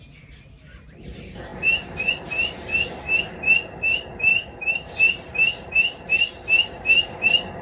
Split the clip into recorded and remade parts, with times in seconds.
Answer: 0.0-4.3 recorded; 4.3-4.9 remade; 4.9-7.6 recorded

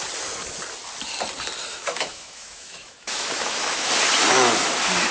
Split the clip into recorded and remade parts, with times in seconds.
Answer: 0.0-1.7 recorded; 1.7-3.9 remade; 3.9-5.1 recorded

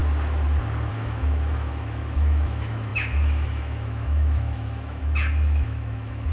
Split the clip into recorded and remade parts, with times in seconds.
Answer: 0.0-0.9 recorded; 0.9-6.3 remade

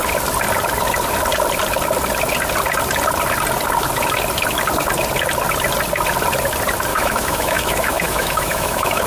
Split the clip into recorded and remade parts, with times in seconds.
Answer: 0.0-6.9 recorded; 6.9-9.1 remade

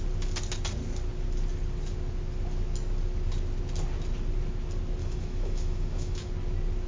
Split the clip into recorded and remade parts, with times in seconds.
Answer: 0.0-5.0 recorded; 5.0-6.3 remade; 6.3-6.9 recorded

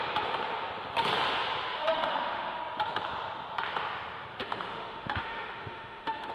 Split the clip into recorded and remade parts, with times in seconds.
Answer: 0.0-1.7 recorded; 1.7-2.6 remade; 2.6-4.4 recorded; 4.4-6.3 remade

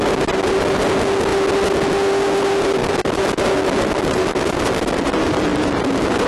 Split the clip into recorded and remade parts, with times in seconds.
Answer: 0.0-6.3 recorded